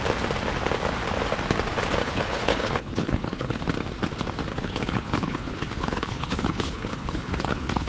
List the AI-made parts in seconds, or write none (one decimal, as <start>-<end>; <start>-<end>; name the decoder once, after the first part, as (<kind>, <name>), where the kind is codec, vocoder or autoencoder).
2.0-3.6 (codec, HILCodec); 4.5-7.9